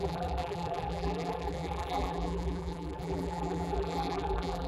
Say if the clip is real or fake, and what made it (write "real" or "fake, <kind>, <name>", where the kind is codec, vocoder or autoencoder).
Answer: fake, vocoder, BigVGAN v2